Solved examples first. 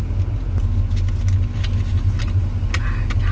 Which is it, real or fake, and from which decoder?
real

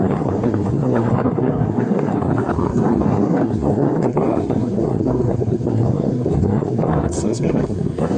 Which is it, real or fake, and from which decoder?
fake, codec, SNAC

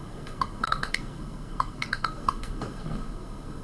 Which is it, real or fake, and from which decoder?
fake, codec, SNAC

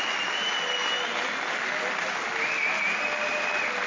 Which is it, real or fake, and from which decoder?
real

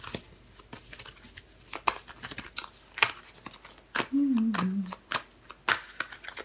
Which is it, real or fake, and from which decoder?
real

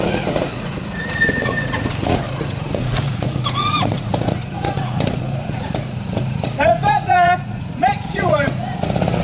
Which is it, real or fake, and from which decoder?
fake, vocoder, Vocos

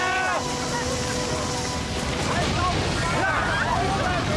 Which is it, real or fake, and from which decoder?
real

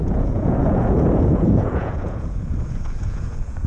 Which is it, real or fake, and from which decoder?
fake, vocoder, Vocos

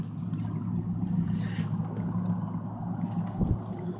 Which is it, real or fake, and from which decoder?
real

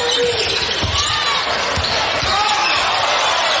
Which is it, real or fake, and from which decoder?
real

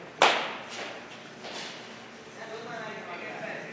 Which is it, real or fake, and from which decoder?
real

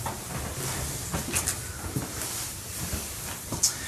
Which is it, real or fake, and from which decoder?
real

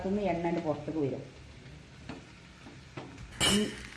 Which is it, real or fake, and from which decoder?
real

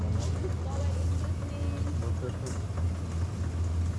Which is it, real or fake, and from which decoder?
real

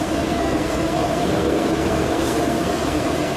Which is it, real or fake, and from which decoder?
fake, codec, SNAC